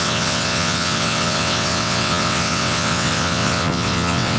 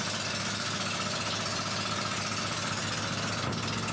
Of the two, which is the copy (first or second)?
first